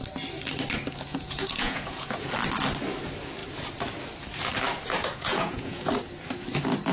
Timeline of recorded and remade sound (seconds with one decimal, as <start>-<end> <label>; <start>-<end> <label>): 0.0-1.1 recorded; 1.1-2.2 remade; 2.2-5.0 recorded; 5.0-5.9 remade; 5.9-6.9 recorded